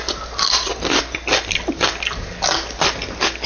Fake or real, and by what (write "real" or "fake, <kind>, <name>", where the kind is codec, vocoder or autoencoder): real